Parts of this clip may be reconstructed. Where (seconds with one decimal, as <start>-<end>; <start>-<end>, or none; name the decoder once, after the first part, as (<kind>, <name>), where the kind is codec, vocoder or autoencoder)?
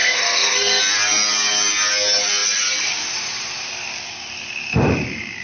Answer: 0.0-0.8 (codec, SNAC)